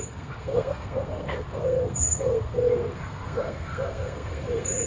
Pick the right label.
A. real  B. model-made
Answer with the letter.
B